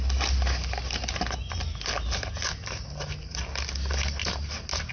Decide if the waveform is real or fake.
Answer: real